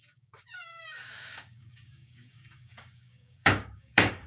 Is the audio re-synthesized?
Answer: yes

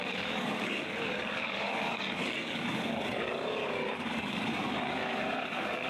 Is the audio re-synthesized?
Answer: yes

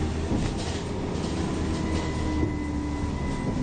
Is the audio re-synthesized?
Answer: no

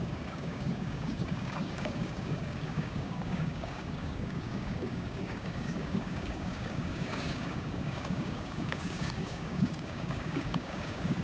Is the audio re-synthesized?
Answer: yes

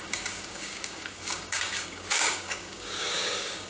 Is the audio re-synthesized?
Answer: yes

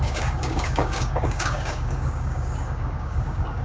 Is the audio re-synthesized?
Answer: yes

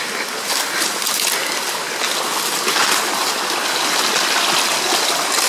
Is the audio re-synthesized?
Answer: no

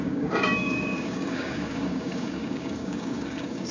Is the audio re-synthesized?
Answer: yes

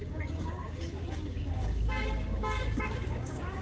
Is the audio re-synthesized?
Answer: yes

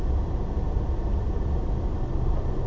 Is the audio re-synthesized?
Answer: no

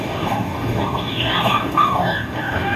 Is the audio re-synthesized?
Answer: yes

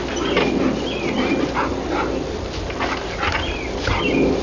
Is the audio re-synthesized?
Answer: no